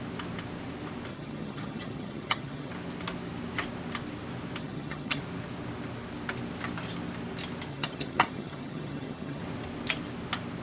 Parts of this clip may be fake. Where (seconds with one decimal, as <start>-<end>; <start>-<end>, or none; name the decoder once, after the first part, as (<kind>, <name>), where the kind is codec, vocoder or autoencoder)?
1.1-2.7 (vocoder, HiFi-GAN); 4.6-5.2; 7.7-9.4